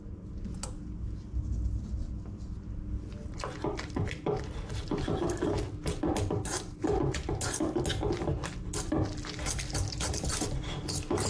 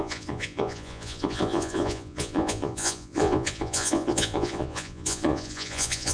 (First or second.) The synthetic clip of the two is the second